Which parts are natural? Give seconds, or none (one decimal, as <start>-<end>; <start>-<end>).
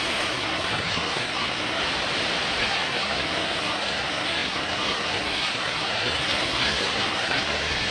1.8-2.6